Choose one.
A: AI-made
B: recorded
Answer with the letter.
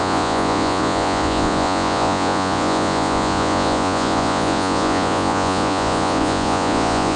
A